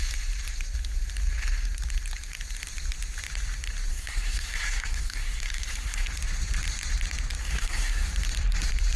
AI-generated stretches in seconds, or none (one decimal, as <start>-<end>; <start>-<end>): 3.9-6.1; 7.4-8.1